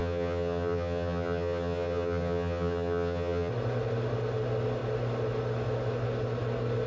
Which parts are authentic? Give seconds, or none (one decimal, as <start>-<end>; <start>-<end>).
3.5-6.9